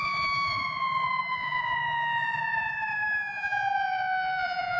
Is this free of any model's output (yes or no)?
no